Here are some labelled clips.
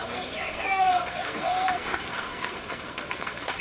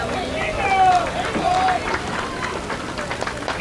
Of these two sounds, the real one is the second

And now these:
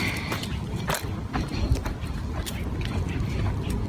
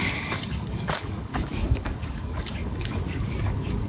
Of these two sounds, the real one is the first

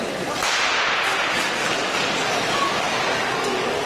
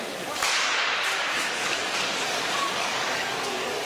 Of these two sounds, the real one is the first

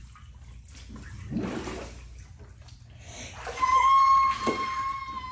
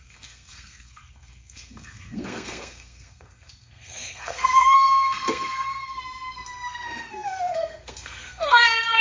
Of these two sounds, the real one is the first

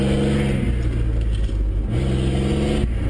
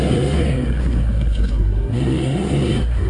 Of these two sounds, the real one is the first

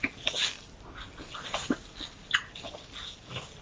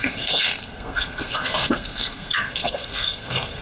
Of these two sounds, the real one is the first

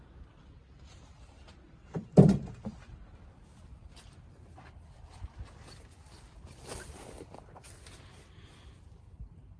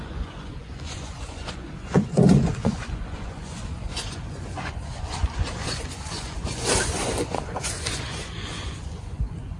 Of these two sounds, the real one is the first